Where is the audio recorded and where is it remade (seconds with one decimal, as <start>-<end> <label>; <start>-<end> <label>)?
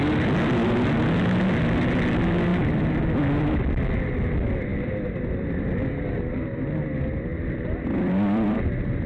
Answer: 0.0-2.5 recorded; 2.5-3.2 remade; 3.2-7.3 recorded; 7.3-9.1 remade